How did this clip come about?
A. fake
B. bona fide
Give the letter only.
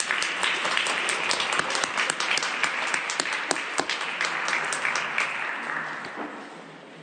B